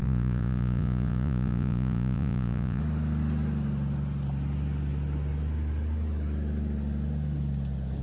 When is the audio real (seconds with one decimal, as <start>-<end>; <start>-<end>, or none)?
2.8-8.0